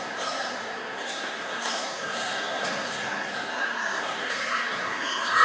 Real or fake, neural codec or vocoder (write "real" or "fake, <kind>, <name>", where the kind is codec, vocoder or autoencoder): fake, codec, SNAC